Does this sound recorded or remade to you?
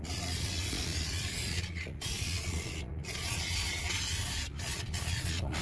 remade